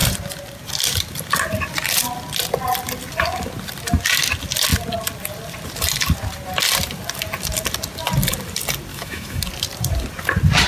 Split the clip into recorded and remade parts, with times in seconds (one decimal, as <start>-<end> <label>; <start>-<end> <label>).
0.0-8.9 recorded; 8.9-9.4 remade; 9.4-10.7 recorded